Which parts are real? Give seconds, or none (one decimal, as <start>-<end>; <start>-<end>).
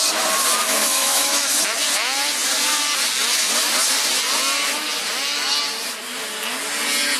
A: 0.0-0.8; 1.6-7.2